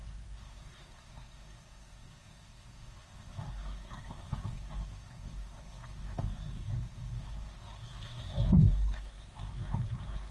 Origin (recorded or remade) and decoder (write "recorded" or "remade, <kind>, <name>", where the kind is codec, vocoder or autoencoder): remade, codec, SNAC